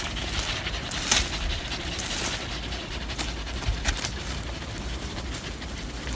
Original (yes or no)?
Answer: yes